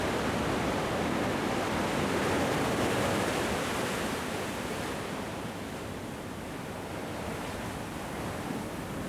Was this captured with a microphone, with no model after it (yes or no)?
yes